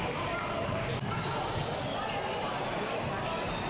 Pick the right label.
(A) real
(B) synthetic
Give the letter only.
A